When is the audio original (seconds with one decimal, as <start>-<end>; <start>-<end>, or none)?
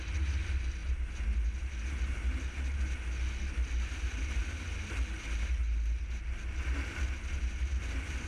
0.0-8.3